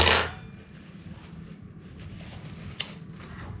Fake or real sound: real